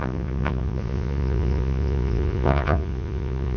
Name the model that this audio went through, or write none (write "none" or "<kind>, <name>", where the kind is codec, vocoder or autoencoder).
vocoder, Vocos